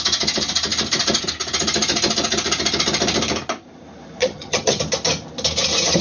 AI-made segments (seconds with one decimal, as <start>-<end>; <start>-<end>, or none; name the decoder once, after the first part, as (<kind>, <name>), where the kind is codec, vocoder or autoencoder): 4.2-4.8 (vocoder, HiFi-GAN)

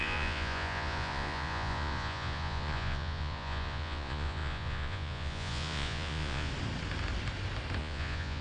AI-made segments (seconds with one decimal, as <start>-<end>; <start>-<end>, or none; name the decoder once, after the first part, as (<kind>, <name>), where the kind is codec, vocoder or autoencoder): 0.0-6.5 (vocoder, Vocos); 7.8-8.4